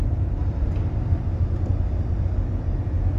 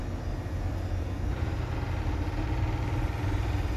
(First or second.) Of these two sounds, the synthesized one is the first